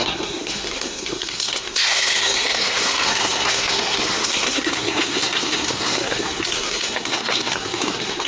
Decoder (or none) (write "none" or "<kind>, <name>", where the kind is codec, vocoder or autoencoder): codec, SNAC